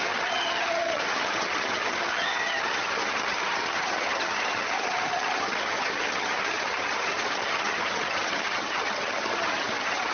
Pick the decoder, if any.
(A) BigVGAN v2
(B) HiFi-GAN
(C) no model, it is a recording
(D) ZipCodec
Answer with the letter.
B